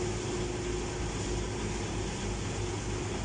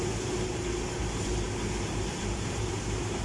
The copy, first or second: second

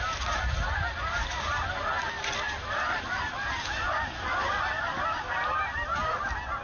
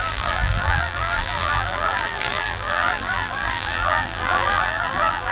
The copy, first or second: second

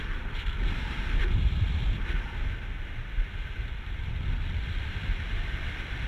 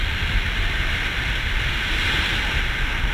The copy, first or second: first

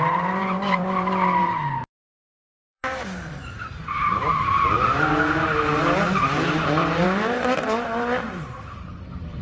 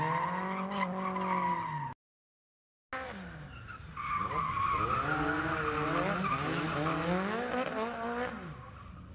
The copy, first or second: first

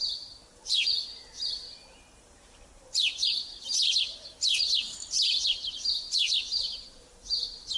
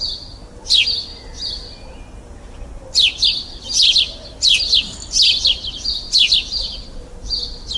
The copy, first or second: first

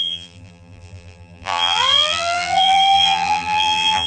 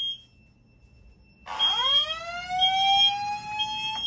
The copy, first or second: first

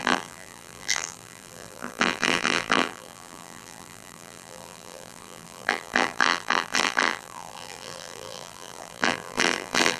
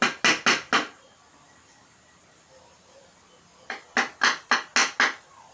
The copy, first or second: first